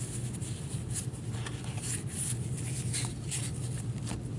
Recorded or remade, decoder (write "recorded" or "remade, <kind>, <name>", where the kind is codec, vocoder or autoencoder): recorded